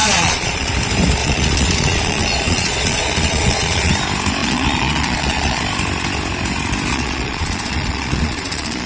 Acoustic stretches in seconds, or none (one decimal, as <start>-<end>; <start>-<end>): 0.7-1.2; 3.9-4.4; 5.6-6.9